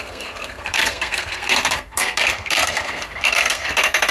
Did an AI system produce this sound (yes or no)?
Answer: yes